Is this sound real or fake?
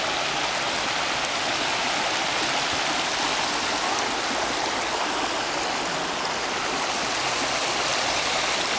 real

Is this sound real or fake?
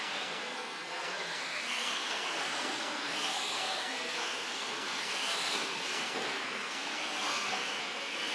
fake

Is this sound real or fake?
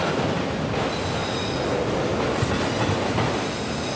real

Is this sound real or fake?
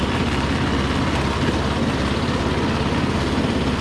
real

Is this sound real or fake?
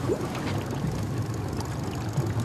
real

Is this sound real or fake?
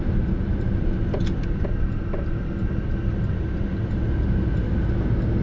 real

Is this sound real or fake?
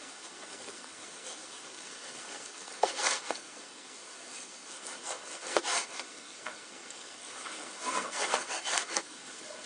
fake